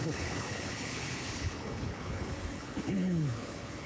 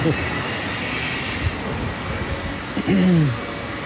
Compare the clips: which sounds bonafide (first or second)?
second